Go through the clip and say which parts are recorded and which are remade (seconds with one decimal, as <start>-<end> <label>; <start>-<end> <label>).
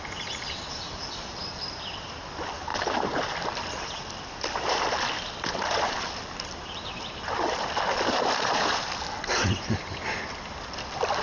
0.0-11.2 recorded